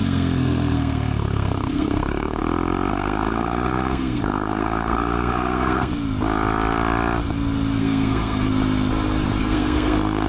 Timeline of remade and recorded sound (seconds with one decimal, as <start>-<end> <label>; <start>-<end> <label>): 0.0-2.4 remade; 2.4-2.9 recorded; 2.9-5.9 remade; 5.9-7.8 recorded; 7.8-8.5 remade; 8.5-9.4 recorded; 9.4-10.3 remade